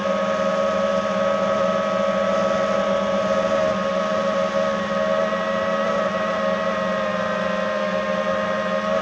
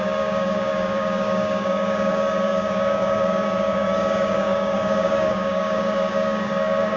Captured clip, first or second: first